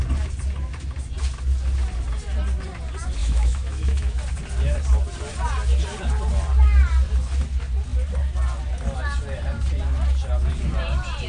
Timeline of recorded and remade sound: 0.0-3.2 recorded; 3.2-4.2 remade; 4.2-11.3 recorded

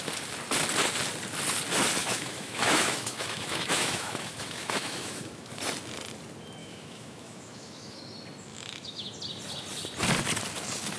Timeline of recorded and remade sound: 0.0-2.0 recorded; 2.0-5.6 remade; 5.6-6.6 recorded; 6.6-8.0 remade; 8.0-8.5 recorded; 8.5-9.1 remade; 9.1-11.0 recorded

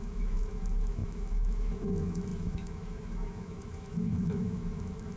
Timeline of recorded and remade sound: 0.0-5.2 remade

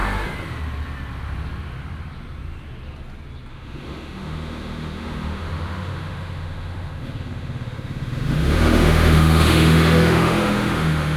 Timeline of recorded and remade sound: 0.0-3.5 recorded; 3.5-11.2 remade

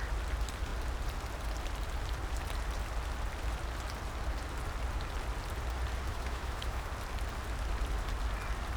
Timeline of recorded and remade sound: 0.0-6.1 recorded; 6.1-6.9 remade; 6.9-8.8 recorded

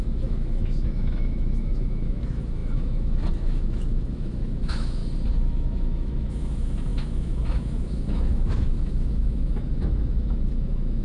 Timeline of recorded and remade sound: 0.0-5.0 remade; 5.0-5.5 recorded; 5.5-11.0 remade

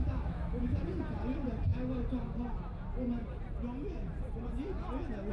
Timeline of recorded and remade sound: 0.0-0.8 remade; 0.8-5.3 recorded